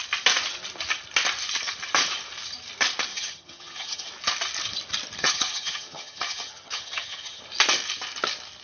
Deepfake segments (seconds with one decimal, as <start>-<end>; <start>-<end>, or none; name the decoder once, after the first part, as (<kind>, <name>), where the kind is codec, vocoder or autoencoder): 3.1-4.1 (vocoder, HiFi-GAN); 5.2-7.4

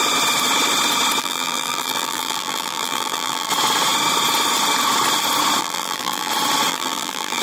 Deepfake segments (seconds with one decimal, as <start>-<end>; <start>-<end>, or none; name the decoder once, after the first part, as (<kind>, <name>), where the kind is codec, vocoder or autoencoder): 1.2-3.5 (vocoder, BigVGAN v2); 5.6-6.3; 6.7-7.4

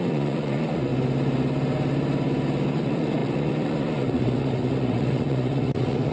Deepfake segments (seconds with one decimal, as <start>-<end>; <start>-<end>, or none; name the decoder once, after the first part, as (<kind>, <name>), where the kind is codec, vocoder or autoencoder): 0.0-0.9 (vocoder, Vocos); 2.7-6.1

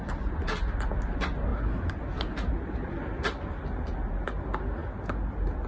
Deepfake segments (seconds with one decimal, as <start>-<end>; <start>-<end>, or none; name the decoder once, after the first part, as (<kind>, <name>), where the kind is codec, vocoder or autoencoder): none

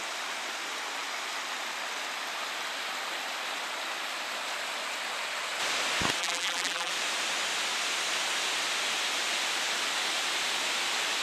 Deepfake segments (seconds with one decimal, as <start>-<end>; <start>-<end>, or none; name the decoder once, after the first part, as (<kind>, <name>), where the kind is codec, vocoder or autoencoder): 6.2-6.9 (vocoder, BigVGAN v2)